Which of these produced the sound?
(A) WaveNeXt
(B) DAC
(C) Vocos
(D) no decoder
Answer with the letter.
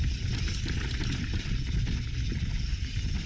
D